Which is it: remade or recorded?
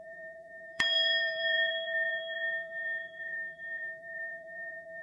remade